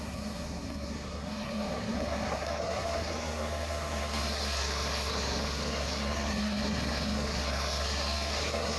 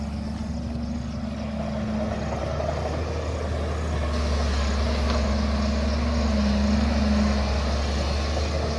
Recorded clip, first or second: second